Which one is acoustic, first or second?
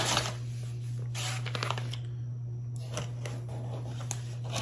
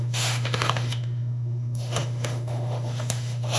first